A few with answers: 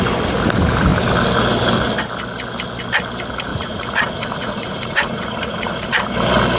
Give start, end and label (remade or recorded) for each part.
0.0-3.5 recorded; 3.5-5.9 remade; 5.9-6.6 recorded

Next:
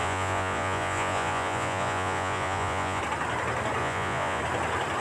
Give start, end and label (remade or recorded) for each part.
0.0-3.0 remade; 3.0-3.8 recorded; 3.8-4.4 remade; 4.4-5.0 recorded

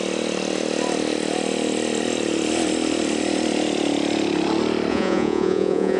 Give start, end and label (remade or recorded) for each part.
0.0-4.9 recorded; 4.9-6.0 remade

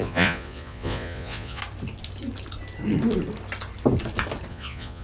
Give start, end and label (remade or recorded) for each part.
0.0-1.6 remade; 1.6-4.5 recorded; 4.5-5.0 remade

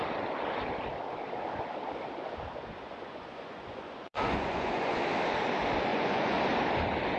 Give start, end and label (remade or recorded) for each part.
0.0-2.7 recorded; 2.7-5.0 remade; 5.0-5.9 recorded; 5.9-6.4 remade; 6.4-7.2 recorded

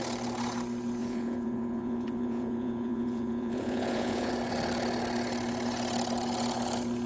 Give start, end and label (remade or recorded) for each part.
0.0-1.0 recorded; 1.0-4.3 remade; 4.3-7.1 recorded

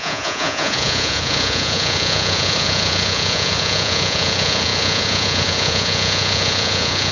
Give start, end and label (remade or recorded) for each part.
0.0-7.1 remade

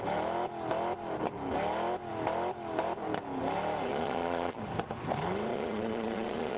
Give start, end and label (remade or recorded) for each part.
0.0-3.9 recorded; 3.9-4.6 remade; 4.6-5.5 recorded; 5.5-6.6 remade